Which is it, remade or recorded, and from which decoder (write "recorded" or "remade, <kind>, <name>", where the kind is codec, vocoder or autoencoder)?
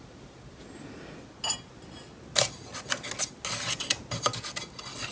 recorded